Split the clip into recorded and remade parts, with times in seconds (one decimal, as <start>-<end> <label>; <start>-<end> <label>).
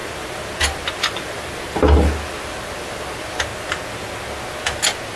0.0-3.5 remade; 3.5-5.2 recorded